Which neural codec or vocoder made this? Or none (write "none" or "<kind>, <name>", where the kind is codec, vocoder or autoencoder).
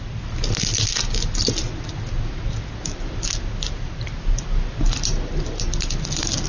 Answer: none